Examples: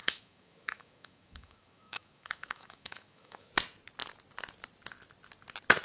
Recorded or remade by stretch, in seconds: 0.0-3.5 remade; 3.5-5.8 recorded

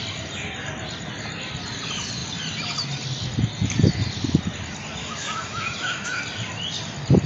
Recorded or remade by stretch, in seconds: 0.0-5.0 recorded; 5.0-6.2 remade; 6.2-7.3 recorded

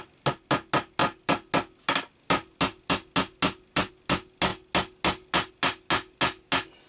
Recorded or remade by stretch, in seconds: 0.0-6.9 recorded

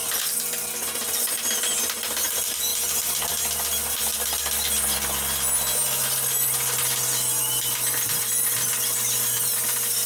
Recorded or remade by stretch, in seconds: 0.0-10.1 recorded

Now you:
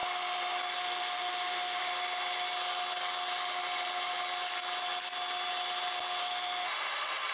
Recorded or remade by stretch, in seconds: 0.0-0.8 recorded; 0.8-1.8 remade; 1.8-6.2 recorded; 6.2-7.3 remade

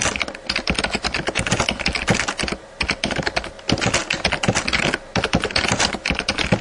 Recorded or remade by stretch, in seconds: 0.0-6.6 recorded

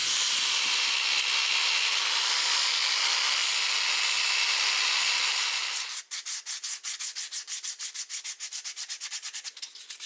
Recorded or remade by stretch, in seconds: 0.0-10.1 recorded